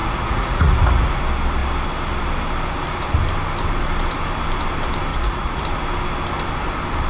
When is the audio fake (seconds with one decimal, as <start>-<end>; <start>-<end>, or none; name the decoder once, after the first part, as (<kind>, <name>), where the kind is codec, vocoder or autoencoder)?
0.0-1.2 (vocoder, Vocos); 5.1-5.6